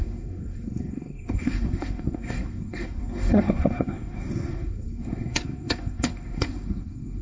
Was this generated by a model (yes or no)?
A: yes